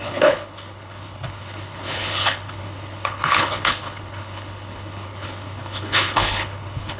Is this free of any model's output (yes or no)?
no